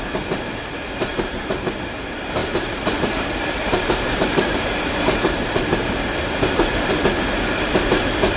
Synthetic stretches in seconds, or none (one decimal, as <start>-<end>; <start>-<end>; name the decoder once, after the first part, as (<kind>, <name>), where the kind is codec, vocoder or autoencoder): 1.1-1.7 (vocoder, BigVGAN v2); 2.4-6.9